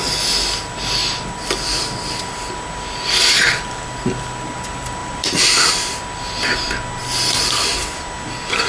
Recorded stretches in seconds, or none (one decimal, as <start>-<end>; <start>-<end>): 0.0-1.0; 2.2-5.0; 5.7-8.7